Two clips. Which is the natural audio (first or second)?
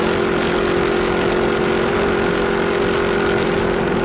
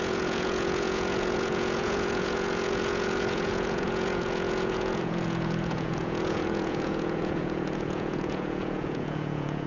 first